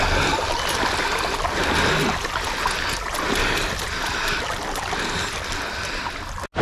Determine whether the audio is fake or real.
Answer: real